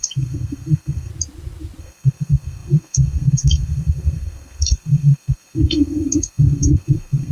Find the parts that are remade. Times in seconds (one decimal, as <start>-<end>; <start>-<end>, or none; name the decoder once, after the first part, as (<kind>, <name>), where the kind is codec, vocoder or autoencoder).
0.0-1.1 (codec, SNAC); 1.8-7.3